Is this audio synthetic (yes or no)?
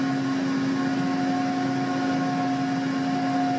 no